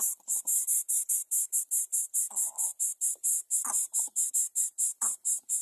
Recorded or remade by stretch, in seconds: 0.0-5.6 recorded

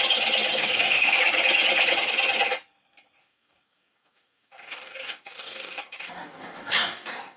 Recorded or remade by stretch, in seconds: 0.0-0.5 recorded; 0.5-1.2 remade; 1.2-3.2 recorded; 3.2-7.4 remade

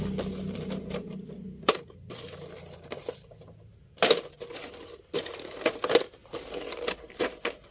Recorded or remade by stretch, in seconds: 0.0-7.7 recorded

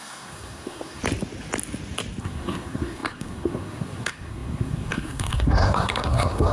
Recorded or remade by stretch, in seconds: 0.0-1.0 remade; 1.0-2.2 recorded; 2.2-6.5 remade

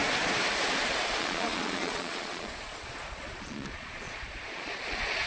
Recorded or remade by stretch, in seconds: 0.0-1.0 recorded; 1.0-5.3 remade

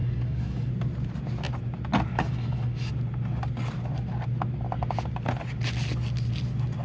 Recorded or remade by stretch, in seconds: 0.0-0.7 remade; 0.7-2.1 recorded; 2.1-2.9 remade; 2.9-6.8 recorded

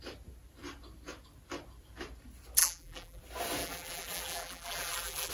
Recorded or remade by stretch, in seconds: 0.0-2.6 recorded; 2.6-3.2 remade; 3.2-3.6 recorded; 3.6-5.3 remade

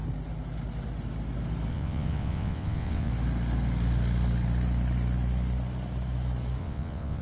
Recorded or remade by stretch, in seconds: 0.0-1.7 recorded; 1.7-3.1 remade; 3.1-6.6 recorded; 6.6-7.2 remade